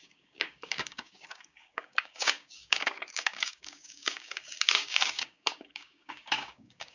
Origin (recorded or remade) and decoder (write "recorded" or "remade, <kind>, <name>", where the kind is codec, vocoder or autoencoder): remade, codec, DAC